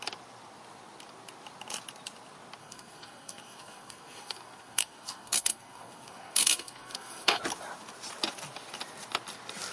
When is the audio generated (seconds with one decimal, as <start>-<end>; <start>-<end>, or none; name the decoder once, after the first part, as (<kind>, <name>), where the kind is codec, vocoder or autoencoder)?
2.6-7.4 (codec, SNAC)